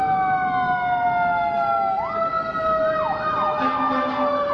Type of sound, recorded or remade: recorded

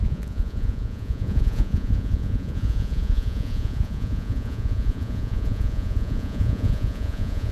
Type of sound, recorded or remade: remade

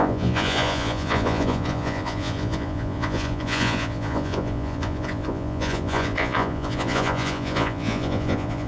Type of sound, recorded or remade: remade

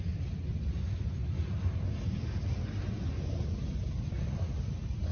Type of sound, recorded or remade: recorded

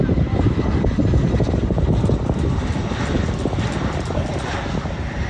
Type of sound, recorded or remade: recorded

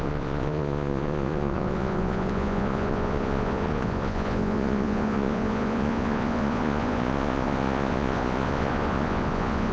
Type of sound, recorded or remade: remade